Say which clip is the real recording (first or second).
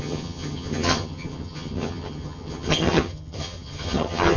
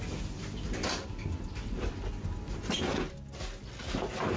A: second